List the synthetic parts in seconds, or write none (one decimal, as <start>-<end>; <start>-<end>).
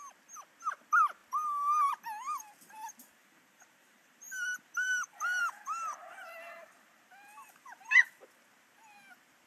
3.2-8.0